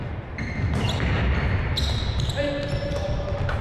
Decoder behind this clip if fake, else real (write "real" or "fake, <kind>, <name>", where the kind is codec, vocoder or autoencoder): real